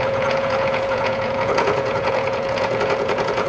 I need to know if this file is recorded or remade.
remade